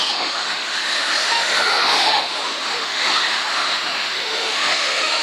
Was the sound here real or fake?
fake